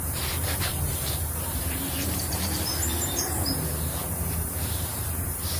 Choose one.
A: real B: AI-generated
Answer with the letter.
B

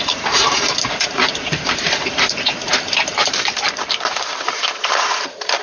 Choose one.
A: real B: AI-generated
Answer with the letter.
B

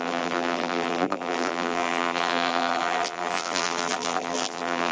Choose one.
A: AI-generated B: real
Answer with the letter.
A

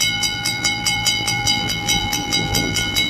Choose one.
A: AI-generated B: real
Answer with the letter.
A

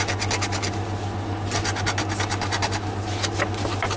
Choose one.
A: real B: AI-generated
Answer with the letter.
A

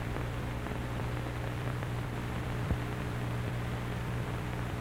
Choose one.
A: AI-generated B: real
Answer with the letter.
A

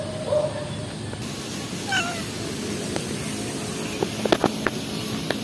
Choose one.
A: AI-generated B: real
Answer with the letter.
B